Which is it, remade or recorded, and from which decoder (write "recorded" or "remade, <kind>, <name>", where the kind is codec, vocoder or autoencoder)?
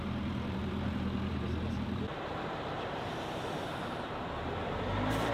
remade, vocoder, BigVGAN v2